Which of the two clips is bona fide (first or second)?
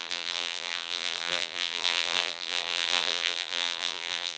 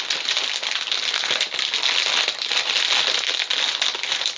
second